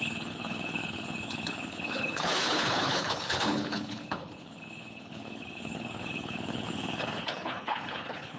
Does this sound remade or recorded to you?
remade